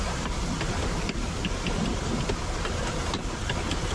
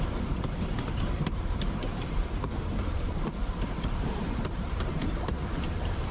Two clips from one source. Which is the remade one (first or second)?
second